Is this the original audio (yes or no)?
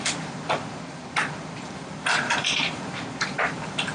yes